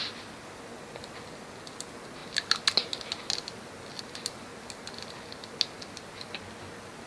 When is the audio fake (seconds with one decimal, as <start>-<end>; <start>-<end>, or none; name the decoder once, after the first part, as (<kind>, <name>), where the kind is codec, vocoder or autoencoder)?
none